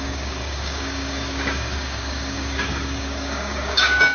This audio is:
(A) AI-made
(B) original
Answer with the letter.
A